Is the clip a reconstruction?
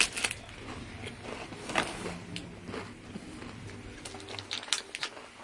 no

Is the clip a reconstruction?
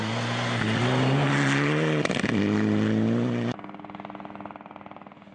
no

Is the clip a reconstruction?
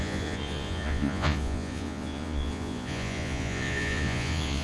yes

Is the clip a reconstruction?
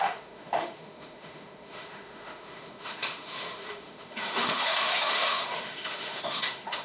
yes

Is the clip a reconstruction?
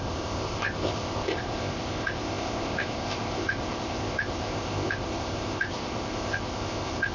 yes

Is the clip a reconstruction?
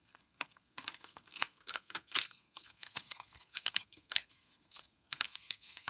yes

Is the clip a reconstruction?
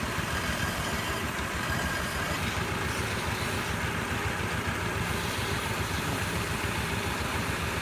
no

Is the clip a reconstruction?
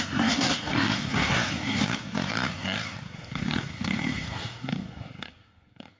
yes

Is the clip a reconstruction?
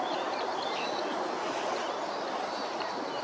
no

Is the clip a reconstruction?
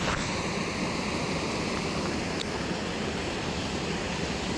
no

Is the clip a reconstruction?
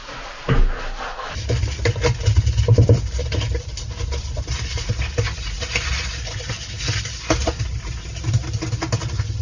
no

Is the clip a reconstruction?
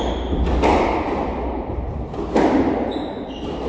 no